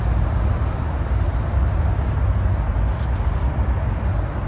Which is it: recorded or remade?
recorded